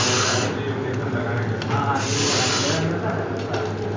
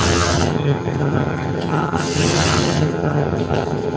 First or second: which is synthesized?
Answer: second